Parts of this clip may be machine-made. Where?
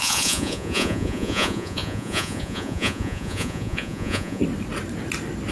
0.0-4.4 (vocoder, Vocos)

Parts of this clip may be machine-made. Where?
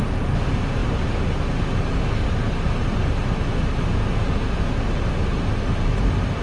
none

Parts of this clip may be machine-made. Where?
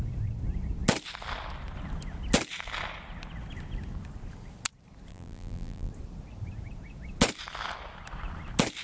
5.1-5.9 (vocoder, BigVGAN v2)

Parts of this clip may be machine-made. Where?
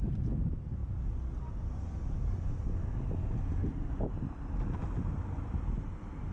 none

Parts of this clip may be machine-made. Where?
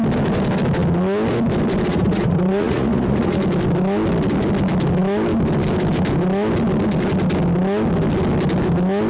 1.9-3.4 (vocoder, Vocos)